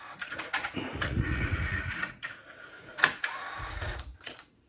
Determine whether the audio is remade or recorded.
remade